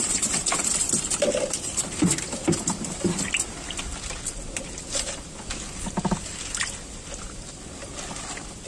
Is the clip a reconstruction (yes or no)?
no